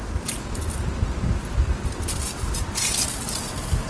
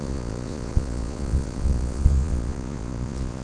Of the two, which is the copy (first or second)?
second